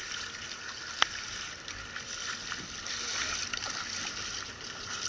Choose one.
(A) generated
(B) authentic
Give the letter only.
B